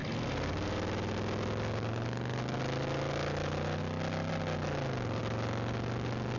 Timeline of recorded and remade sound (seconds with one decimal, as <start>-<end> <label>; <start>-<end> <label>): 0.0-6.4 recorded